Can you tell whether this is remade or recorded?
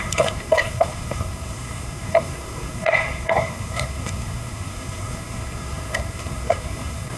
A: remade